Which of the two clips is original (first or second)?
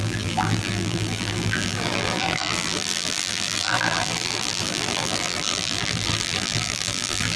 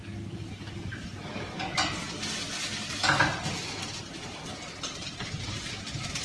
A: second